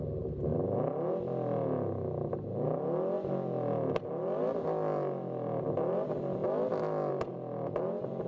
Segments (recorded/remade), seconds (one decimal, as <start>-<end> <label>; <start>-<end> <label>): 0.0-8.3 recorded